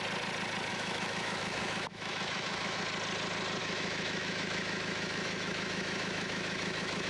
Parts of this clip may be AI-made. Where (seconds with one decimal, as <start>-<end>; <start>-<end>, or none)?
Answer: 0.7-2.8; 3.6-7.1